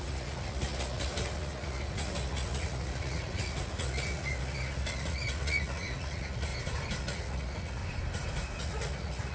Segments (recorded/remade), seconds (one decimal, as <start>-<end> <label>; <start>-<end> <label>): 0.0-6.5 remade; 6.5-7.0 recorded; 7.0-7.8 remade; 7.8-8.6 recorded; 8.6-9.3 remade